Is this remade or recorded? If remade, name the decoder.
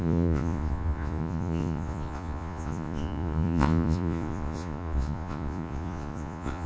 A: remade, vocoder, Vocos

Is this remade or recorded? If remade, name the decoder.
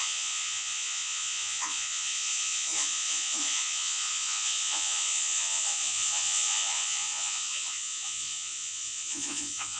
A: remade, vocoder, Vocos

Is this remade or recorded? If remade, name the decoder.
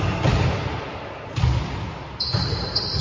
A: recorded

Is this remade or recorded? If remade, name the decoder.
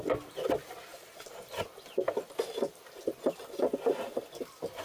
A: recorded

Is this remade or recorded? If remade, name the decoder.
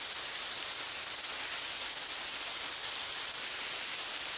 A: recorded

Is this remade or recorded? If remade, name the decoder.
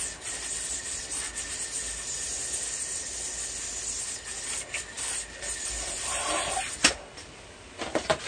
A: recorded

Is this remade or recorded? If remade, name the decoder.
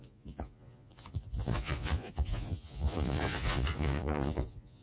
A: remade, vocoder, Vocos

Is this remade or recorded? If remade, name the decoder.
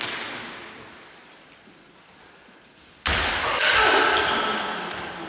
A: recorded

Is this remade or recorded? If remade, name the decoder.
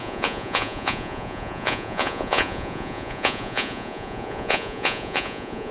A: remade, vocoder, Vocos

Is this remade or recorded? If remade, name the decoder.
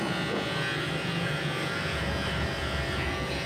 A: remade, vocoder, Vocos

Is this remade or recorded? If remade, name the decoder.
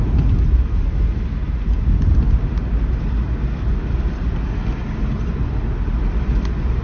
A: recorded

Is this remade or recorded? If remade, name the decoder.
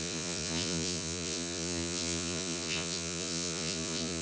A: remade, vocoder, Vocos